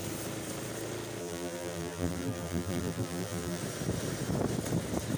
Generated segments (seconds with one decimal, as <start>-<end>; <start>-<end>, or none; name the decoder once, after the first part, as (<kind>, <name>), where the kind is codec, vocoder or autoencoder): 1.2-3.6 (vocoder, BigVGAN v2)